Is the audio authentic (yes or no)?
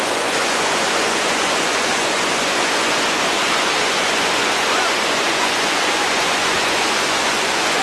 no